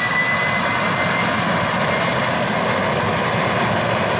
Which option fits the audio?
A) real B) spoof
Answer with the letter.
A